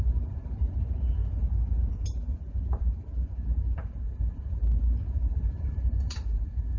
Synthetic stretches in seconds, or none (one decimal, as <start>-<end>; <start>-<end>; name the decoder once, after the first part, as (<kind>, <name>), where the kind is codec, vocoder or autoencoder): 5.2-6.8 (vocoder, BigVGAN v2)